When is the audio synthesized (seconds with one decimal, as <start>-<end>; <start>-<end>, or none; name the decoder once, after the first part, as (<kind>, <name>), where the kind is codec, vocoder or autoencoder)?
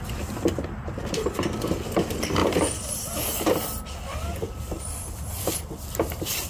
none